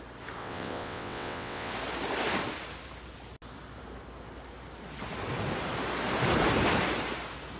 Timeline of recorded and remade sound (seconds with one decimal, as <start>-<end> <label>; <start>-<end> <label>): 0.0-0.4 recorded; 0.4-1.7 remade; 1.7-7.6 recorded